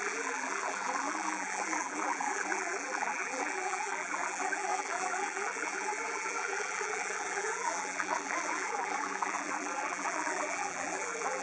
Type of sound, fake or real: fake